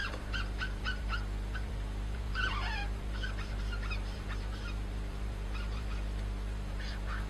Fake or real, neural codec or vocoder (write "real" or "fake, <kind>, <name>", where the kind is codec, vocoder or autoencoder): fake, vocoder, BigVGAN v2